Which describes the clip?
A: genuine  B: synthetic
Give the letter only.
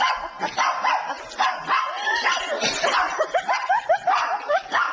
A